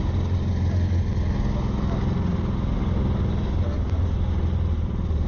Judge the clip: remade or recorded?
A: recorded